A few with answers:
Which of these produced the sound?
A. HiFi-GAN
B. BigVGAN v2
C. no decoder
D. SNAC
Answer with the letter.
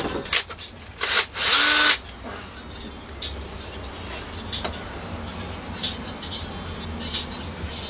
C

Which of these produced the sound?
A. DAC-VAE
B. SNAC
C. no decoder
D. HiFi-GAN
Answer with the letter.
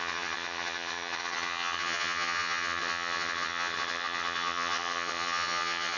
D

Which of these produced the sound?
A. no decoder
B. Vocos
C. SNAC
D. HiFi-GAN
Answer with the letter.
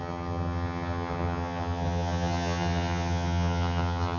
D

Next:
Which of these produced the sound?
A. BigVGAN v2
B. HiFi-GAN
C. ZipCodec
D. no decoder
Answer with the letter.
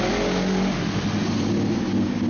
D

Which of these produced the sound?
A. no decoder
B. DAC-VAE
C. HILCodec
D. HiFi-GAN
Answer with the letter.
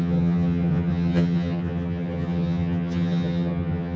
D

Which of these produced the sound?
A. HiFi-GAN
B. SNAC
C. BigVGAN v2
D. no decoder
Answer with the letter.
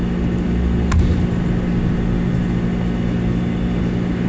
D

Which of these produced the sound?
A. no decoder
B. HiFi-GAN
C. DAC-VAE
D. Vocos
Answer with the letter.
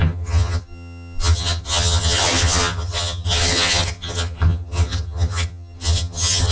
B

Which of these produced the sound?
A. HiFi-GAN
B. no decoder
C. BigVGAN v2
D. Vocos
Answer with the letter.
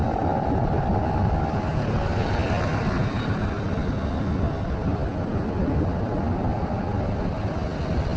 B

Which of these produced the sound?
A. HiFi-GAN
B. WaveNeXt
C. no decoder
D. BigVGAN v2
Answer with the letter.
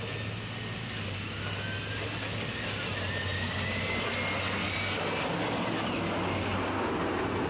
C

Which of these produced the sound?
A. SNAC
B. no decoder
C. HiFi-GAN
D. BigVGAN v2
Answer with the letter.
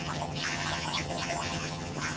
C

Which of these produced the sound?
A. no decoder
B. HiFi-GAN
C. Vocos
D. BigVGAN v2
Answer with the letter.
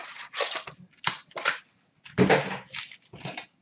A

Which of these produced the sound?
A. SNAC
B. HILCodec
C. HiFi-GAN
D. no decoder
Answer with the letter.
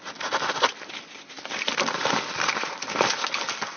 D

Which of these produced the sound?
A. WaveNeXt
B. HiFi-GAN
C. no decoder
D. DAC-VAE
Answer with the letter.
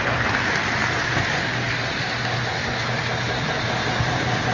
C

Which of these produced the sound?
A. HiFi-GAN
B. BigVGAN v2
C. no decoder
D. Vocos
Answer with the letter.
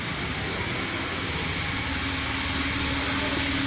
C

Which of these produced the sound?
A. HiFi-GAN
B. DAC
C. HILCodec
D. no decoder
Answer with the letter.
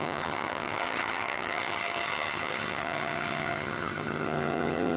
A